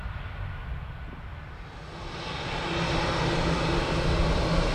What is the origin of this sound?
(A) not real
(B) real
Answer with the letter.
B